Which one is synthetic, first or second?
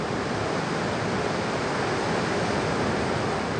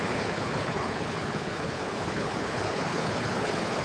second